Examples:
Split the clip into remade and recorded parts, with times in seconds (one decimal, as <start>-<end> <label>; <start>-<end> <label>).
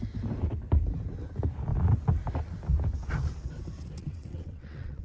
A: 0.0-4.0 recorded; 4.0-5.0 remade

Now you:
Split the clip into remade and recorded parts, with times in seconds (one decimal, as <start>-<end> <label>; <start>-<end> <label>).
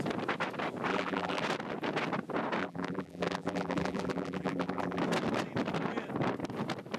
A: 0.0-0.9 recorded; 0.9-1.4 remade; 1.4-2.6 recorded; 2.6-5.0 remade; 5.0-7.0 recorded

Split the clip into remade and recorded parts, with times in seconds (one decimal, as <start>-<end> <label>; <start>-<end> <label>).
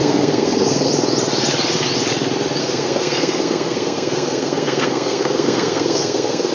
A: 0.0-0.9 remade; 0.9-2.6 recorded; 2.6-6.5 remade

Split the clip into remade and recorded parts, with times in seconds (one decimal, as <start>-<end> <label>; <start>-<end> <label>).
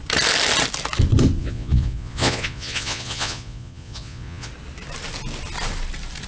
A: 0.0-1.4 recorded; 1.4-4.5 remade; 4.5-6.3 recorded